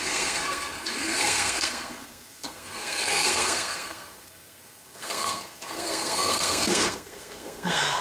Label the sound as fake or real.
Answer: fake